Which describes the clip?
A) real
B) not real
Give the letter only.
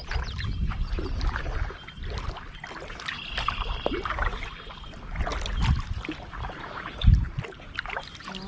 A